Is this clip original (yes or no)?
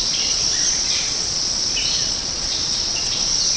no